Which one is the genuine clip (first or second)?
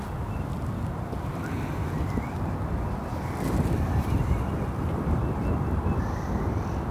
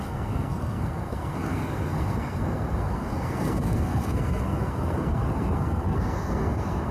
first